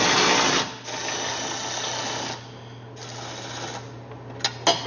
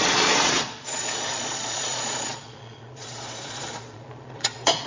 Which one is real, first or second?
first